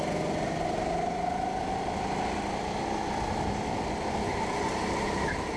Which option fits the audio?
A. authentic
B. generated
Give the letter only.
A